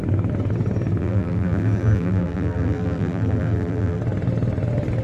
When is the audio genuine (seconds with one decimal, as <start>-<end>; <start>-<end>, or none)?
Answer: 0.0-1.0; 4.0-5.0